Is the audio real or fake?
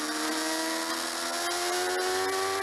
real